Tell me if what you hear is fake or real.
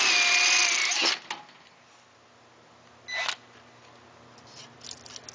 real